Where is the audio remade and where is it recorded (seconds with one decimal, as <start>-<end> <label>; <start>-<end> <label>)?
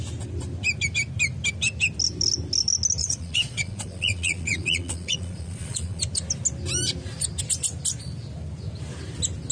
0.0-3.0 recorded; 3.0-6.0 remade; 6.0-9.5 recorded